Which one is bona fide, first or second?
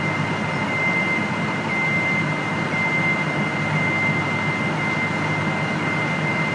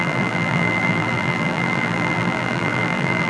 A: first